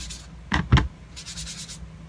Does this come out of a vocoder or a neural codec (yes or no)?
no